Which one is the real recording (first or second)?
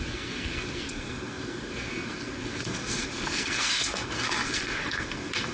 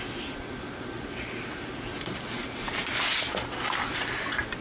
second